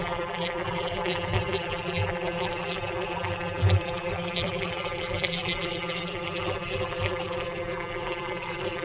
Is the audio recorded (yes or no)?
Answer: no